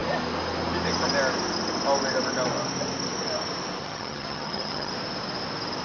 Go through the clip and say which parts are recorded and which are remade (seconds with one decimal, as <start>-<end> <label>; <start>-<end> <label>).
0.0-3.8 recorded; 3.8-4.9 remade; 4.9-5.8 recorded